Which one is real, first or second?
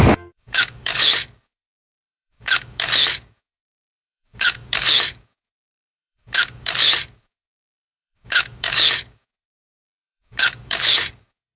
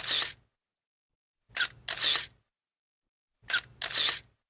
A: second